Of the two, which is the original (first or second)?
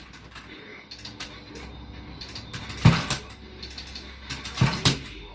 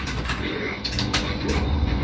first